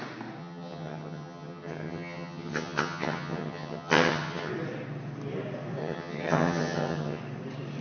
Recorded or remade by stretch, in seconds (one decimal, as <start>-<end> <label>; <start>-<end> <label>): 0.0-0.4 recorded; 0.4-4.5 remade; 4.5-5.8 recorded; 5.8-7.2 remade; 7.2-7.8 recorded